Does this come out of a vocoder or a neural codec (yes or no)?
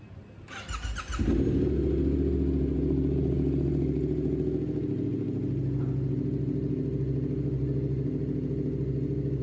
no